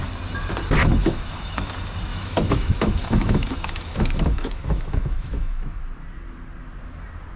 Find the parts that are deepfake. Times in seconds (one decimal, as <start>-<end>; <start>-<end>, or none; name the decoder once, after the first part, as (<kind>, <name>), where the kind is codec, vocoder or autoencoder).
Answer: 0.8-1.7 (autoencoder, DAC-VAE); 2.1-5.8